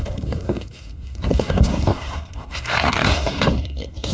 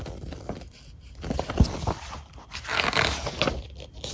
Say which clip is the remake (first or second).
first